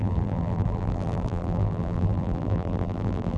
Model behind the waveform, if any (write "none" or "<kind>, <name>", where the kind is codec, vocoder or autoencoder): vocoder, BigVGAN v2